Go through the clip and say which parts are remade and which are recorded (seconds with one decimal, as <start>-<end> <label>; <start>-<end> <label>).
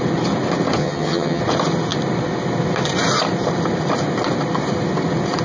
0.0-0.8 recorded; 0.8-1.4 remade; 1.4-5.4 recorded